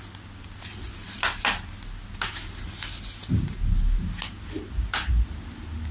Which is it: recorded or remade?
recorded